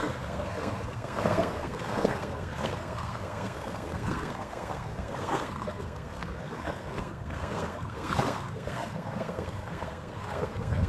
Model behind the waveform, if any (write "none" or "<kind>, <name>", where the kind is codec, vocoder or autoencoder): codec, SNAC